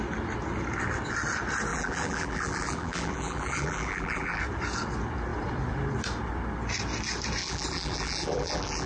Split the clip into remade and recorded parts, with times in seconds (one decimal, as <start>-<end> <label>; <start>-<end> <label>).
0.0-1.7 recorded; 1.7-4.4 remade; 4.4-7.4 recorded; 7.4-8.9 remade